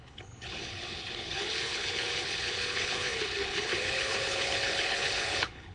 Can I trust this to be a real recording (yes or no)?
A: no